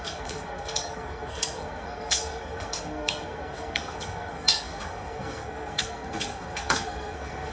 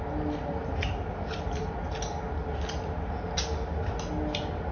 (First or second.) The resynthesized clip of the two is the first